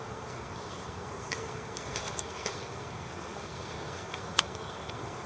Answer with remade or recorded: remade